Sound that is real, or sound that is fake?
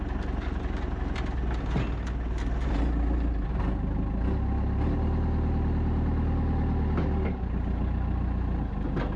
real